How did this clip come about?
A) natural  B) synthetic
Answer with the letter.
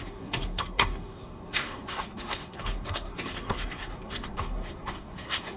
B